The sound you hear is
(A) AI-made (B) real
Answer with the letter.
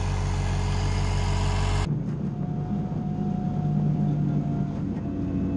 B